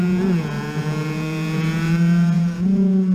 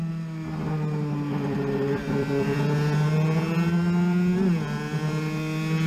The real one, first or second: second